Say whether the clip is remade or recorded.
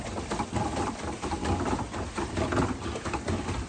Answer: remade